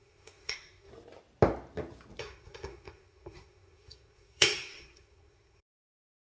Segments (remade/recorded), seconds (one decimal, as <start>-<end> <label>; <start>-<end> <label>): 0.0-0.9 remade; 0.9-2.2 recorded; 2.2-6.4 remade